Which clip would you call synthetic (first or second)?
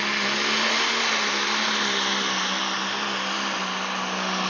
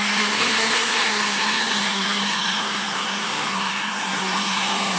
second